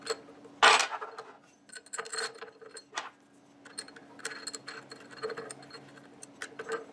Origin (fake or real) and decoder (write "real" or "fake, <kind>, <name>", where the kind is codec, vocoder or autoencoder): real